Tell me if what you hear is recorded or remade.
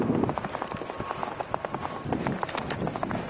recorded